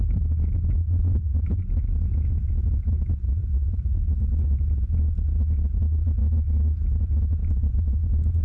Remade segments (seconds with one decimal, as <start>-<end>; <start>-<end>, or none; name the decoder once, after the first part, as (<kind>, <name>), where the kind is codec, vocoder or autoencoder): 0.8-1.6 (vocoder, BigVGAN v2); 3.4-5.0; 7.4-8.4